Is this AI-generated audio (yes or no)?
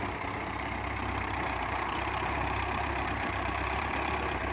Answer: yes